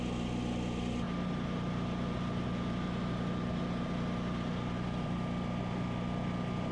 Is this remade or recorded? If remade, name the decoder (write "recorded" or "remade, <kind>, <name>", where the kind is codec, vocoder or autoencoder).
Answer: recorded